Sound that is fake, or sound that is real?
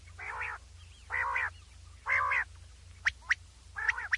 real